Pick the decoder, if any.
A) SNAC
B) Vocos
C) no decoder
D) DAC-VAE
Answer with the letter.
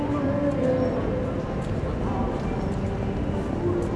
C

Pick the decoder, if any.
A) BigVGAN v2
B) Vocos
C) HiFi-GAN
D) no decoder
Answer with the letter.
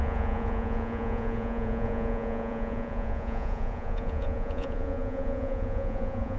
B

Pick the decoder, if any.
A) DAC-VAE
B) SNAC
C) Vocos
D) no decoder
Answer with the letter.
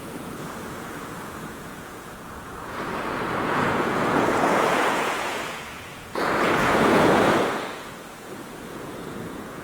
C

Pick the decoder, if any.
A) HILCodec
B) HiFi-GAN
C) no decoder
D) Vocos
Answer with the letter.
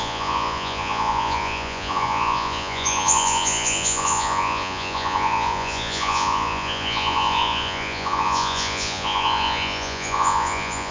D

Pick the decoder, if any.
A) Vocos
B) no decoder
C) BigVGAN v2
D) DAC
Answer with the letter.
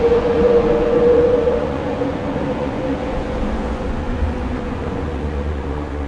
A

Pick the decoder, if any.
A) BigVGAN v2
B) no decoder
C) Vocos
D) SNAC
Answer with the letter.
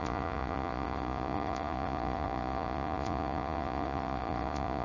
C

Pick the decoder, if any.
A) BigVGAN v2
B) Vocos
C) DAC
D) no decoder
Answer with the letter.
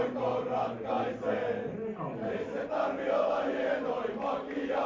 D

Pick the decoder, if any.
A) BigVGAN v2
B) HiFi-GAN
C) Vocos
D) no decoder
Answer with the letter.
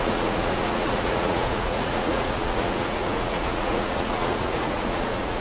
C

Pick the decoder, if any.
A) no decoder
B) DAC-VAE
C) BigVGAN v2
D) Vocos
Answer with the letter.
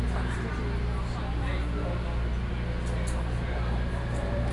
A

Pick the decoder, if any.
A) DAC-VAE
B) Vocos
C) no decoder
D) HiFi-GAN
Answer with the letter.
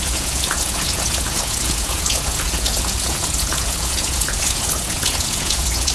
B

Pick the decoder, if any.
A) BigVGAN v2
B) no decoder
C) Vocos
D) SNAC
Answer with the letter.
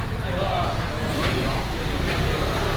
B